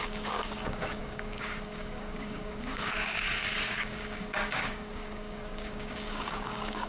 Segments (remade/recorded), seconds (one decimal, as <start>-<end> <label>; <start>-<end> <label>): 0.0-6.9 remade